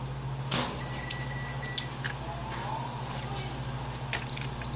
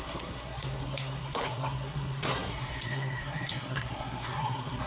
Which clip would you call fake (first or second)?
second